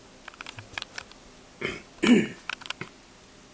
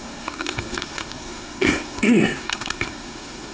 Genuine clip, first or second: first